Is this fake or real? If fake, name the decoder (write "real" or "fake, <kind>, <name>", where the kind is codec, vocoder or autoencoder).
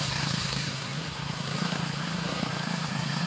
fake, codec, SNAC